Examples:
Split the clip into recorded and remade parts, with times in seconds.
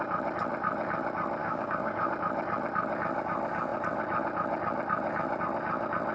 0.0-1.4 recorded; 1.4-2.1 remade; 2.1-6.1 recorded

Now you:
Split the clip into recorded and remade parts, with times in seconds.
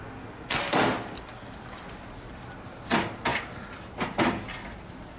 0.0-5.2 recorded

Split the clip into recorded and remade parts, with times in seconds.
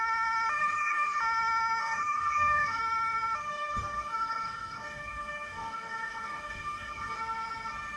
0.0-0.6 recorded; 0.6-1.2 remade; 1.2-1.8 recorded; 1.8-2.8 remade; 2.8-3.5 recorded; 3.5-7.2 remade; 7.2-8.0 recorded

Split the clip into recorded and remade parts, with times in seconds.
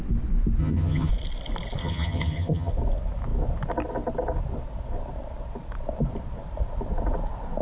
0.0-0.6 recorded; 0.6-1.1 remade; 1.1-1.8 recorded; 1.8-2.7 remade; 2.7-7.6 recorded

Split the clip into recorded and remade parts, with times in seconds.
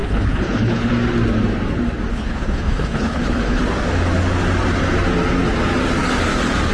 0.0-0.9 remade; 0.9-2.1 recorded; 2.1-3.6 remade; 3.6-6.7 recorded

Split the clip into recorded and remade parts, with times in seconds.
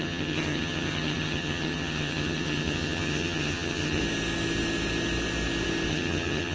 0.0-4.0 remade; 4.0-5.9 recorded; 5.9-6.5 remade